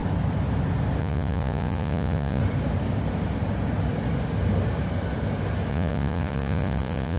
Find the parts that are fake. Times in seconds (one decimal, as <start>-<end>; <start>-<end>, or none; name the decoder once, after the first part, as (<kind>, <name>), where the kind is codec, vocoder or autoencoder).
1.0-2.4 (vocoder, Vocos); 5.7-7.2